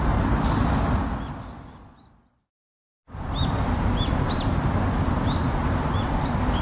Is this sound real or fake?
real